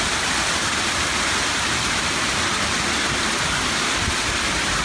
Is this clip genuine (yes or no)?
yes